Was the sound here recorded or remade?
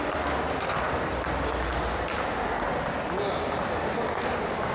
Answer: recorded